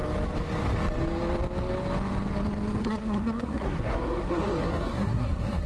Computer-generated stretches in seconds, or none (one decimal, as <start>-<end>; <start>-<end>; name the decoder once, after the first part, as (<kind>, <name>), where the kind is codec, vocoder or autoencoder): 2.8-5.7 (codec, SNAC)

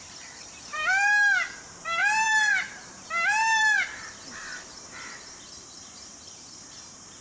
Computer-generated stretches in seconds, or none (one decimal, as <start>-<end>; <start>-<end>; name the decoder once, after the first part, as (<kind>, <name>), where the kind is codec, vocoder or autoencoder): 0.0-7.2 (vocoder, BigVGAN v2)

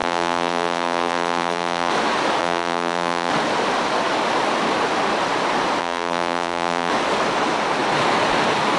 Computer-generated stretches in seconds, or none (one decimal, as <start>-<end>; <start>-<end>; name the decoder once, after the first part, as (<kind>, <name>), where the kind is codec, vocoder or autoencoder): 0.0-1.9 (vocoder, BigVGAN v2); 2.4-3.3; 5.8-6.9